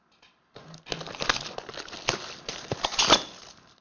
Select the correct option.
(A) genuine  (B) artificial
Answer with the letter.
A